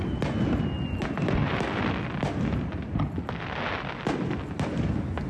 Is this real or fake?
real